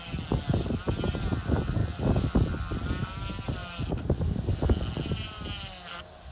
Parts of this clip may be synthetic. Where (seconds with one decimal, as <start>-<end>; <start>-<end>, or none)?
none